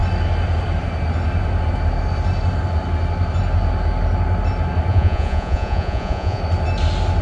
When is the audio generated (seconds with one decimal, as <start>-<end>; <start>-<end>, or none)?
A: 4.9-6.4